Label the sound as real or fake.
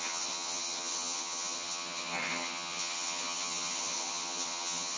fake